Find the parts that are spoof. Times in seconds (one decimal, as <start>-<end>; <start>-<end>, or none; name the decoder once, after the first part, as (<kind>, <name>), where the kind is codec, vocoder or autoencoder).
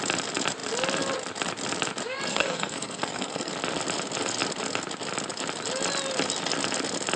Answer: 2.3-3.5 (codec, SNAC)